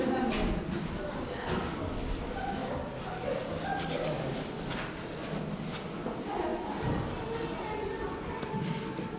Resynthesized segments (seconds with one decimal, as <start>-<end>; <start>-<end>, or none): none